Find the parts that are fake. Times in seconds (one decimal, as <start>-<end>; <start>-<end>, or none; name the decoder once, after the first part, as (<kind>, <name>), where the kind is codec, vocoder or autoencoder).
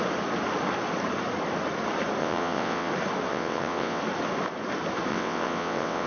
2.2-2.9 (vocoder, WaveNeXt); 3.3-4.0; 5.1-6.1